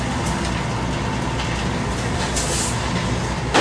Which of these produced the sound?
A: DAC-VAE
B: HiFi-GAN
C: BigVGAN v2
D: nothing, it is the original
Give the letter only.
D